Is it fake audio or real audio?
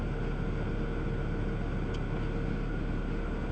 real